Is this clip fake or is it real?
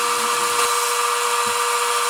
real